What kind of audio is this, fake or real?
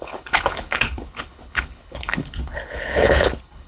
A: fake